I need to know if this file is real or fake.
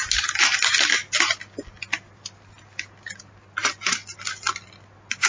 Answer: real